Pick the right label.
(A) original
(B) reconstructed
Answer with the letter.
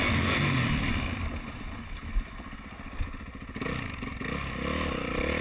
A